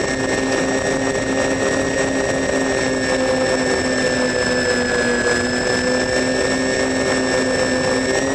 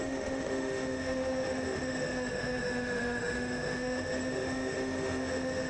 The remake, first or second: second